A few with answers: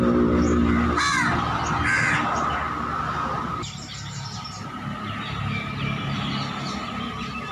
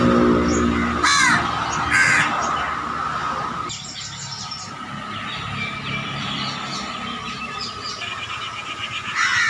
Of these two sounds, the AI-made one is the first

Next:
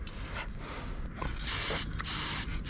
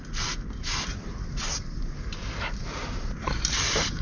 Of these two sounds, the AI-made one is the second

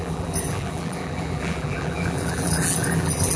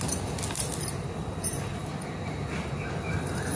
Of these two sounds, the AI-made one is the first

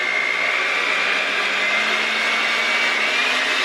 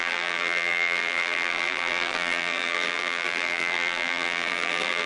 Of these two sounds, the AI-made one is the second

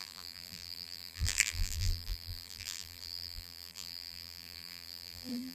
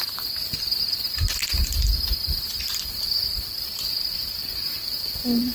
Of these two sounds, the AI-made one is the first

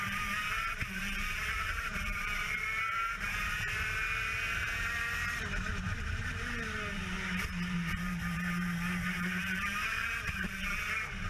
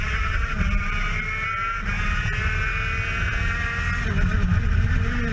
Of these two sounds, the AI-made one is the first